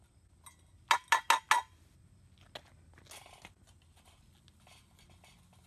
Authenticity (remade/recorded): recorded